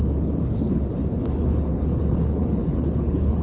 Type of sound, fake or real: fake